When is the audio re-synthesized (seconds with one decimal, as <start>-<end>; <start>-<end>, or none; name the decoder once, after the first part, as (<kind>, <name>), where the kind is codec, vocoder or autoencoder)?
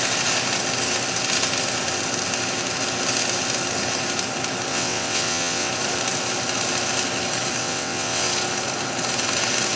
4.7-5.7 (vocoder, WaveNeXt); 7.6-8.3